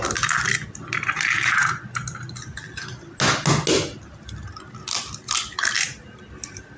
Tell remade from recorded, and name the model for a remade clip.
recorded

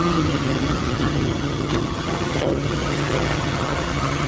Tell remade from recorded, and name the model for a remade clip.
remade, vocoder, HiFi-GAN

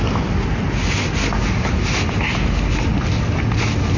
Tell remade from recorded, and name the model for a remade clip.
recorded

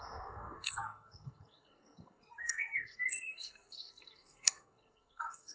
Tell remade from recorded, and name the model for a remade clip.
remade, codec, SNAC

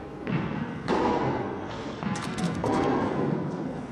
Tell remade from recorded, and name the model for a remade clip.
remade, codec, SNAC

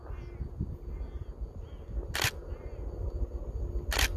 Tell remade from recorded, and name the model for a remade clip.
recorded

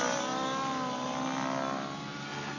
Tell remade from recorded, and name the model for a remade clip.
recorded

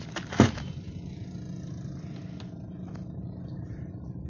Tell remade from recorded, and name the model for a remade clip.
recorded